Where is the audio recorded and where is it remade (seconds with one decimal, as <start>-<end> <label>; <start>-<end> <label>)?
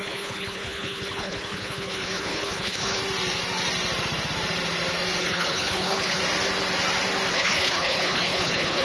0.0-3.0 remade; 3.0-5.2 recorded; 5.2-6.2 remade; 6.2-7.3 recorded; 7.3-8.8 remade